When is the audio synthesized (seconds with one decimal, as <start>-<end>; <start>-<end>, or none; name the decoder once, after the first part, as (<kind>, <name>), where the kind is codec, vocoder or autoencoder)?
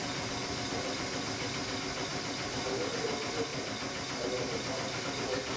2.1-2.9 (vocoder, BigVGAN v2)